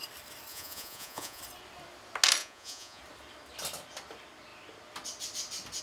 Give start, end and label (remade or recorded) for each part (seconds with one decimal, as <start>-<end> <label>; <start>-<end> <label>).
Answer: 0.0-0.5 recorded; 0.5-1.4 remade; 1.4-2.4 recorded; 2.4-3.0 remade; 3.0-5.8 recorded